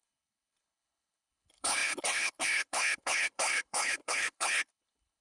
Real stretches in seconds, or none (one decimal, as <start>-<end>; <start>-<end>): none